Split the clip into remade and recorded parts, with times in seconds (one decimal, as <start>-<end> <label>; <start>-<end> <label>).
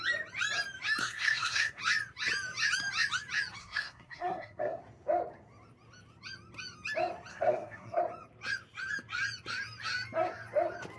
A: 0.0-1.0 recorded; 1.0-1.8 remade; 1.8-3.6 recorded; 3.6-4.8 remade; 4.8-7.3 recorded; 7.3-8.0 remade; 8.0-11.0 recorded